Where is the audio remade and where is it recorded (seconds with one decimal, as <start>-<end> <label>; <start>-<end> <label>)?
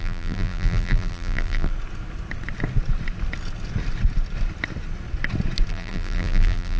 0.0-1.7 remade; 1.7-5.7 recorded; 5.7-6.8 remade